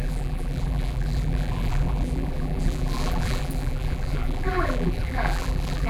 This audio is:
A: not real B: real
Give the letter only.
A